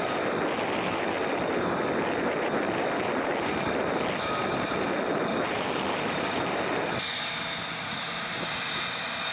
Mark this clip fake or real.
real